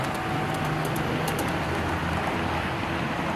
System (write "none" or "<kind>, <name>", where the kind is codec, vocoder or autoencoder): none